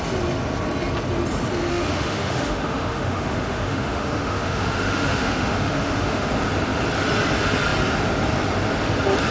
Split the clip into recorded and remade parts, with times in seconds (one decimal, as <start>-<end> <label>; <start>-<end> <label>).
0.0-1.7 recorded; 1.7-6.3 remade; 6.3-9.3 recorded